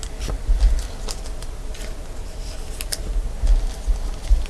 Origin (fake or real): real